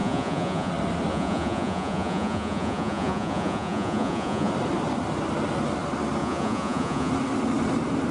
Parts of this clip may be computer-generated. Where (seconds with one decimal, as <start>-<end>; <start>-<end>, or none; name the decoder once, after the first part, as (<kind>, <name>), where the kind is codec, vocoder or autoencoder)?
0.0-0.7 (vocoder, Vocos); 1.1-4.5; 6.2-7.1